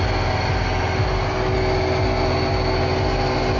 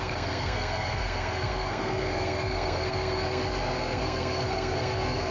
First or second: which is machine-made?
second